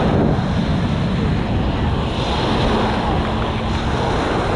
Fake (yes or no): no